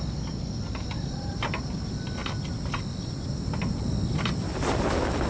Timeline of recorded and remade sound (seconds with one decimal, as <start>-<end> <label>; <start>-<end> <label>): 0.0-5.3 recorded